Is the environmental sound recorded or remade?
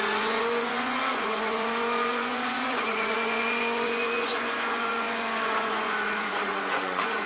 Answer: remade